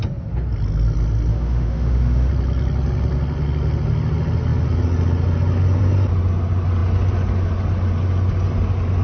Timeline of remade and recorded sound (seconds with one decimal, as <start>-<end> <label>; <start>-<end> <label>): 0.0-1.3 recorded; 1.3-2.3 remade; 2.3-9.0 recorded